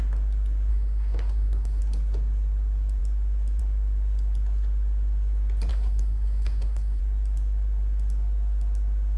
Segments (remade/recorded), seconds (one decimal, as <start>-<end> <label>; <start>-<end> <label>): 0.0-0.7 recorded; 0.7-1.8 remade; 1.8-5.7 recorded; 5.7-7.0 remade; 7.0-9.2 recorded